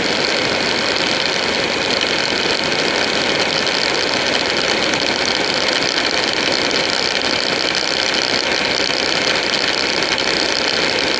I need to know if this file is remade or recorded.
recorded